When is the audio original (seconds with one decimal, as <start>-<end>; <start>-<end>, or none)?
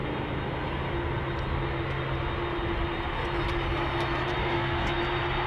0.0-4.4; 5.0-5.5